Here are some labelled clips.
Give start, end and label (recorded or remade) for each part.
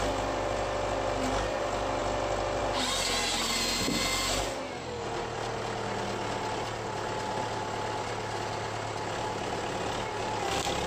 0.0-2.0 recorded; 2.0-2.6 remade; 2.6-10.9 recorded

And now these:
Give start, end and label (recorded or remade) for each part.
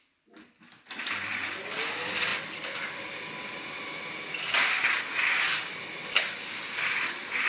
0.0-7.5 recorded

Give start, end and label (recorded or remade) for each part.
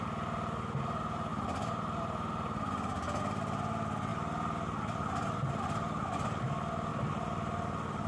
0.0-1.3 recorded; 1.3-3.2 remade; 3.2-4.1 recorded; 4.1-5.6 remade; 5.6-6.9 recorded; 6.9-8.1 remade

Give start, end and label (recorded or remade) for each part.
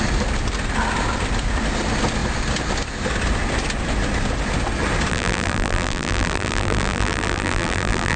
0.0-5.1 recorded; 5.1-8.2 remade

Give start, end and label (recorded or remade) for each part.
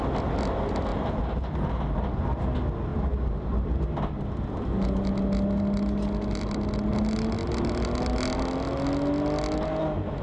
0.0-0.9 recorded; 0.9-2.4 remade; 2.4-2.9 recorded; 2.9-3.8 remade; 3.8-10.2 recorded